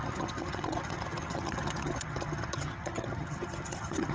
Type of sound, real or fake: fake